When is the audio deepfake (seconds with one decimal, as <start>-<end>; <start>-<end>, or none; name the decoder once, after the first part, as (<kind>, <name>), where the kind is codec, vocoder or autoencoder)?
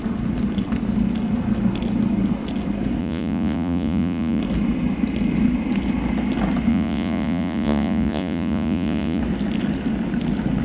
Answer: 3.0-4.4 (vocoder, Vocos); 6.7-9.2